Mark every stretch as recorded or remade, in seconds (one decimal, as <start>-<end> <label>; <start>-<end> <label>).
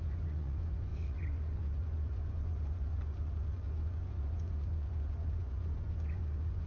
0.0-6.7 remade